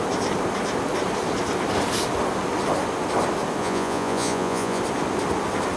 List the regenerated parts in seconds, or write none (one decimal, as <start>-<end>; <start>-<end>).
3.6-4.8